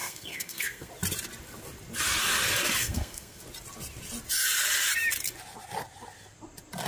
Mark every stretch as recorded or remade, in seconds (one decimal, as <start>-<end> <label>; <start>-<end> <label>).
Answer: 0.0-0.9 remade; 0.9-2.8 recorded; 2.8-3.4 remade; 3.4-6.9 recorded